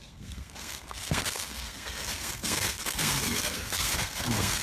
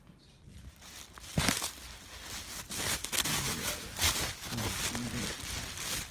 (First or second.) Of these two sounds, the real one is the second